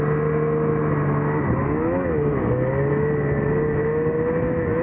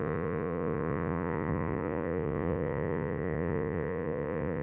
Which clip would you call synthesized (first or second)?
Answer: second